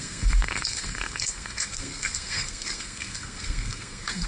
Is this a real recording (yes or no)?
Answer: no